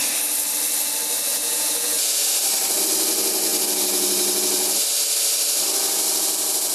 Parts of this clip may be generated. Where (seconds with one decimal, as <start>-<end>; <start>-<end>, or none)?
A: 1.3-2.2

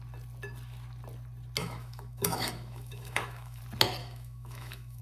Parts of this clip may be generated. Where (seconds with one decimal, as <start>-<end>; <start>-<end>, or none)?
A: 1.6-3.6; 4.0-5.0